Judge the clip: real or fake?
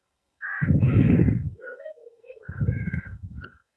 fake